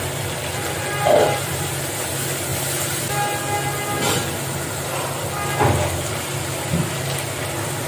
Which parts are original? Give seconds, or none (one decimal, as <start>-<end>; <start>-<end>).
0.0-7.9